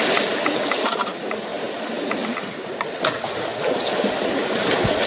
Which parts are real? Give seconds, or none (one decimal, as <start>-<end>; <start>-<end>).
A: 0.0-5.1